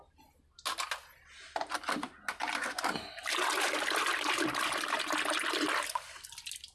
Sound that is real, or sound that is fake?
real